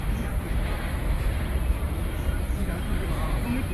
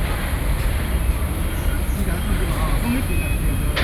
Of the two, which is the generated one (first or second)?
first